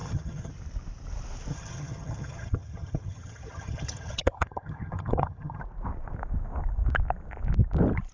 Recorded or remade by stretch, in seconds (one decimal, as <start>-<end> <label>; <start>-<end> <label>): 0.0-0.5 remade; 0.5-1.5 recorded; 1.5-5.6 remade; 5.6-8.1 recorded